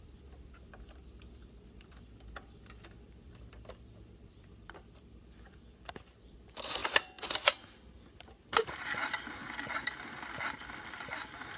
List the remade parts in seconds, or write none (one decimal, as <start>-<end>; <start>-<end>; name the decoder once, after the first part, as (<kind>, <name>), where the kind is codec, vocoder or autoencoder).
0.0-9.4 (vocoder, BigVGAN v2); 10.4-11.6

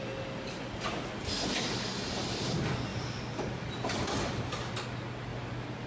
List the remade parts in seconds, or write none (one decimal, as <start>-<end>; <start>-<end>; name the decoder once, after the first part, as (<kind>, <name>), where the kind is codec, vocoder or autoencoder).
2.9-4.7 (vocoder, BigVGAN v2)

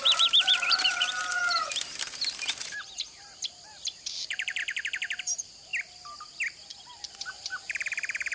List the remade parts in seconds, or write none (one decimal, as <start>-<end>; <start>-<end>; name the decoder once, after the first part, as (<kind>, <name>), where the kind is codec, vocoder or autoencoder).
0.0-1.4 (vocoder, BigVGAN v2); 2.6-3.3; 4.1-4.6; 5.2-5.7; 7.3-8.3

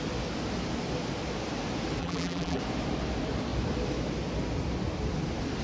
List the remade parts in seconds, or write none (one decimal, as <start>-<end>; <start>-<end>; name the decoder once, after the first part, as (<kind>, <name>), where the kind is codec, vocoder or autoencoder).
2.0-2.6 (vocoder, BigVGAN v2)

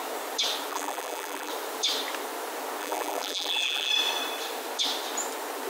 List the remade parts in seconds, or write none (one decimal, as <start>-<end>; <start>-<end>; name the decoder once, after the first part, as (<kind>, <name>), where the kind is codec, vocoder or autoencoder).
0.7-1.5 (vocoder, BigVGAN v2); 2.8-3.9

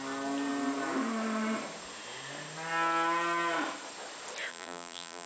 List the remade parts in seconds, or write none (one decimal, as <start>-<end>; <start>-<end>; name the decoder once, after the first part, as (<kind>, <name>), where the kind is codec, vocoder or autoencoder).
4.5-5.3 (vocoder, BigVGAN v2)

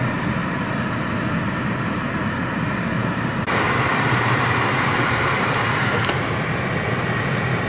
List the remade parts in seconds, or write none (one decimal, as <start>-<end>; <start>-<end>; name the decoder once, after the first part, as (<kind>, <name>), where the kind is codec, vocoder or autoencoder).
3.0-6.2 (vocoder, BigVGAN v2)

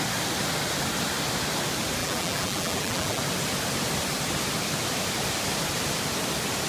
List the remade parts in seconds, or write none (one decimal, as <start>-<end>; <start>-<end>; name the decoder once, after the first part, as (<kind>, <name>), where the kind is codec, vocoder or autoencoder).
2.0-3.2 (vocoder, BigVGAN v2)